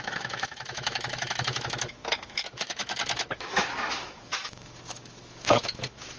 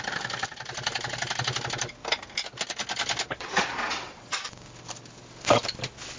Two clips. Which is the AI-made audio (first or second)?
first